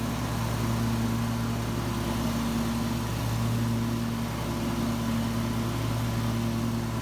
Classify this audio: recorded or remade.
recorded